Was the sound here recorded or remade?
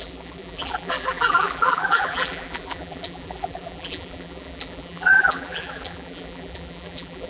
remade